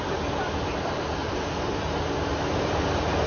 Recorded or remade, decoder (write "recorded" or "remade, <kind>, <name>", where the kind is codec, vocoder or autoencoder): recorded